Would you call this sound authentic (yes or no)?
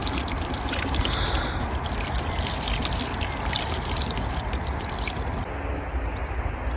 yes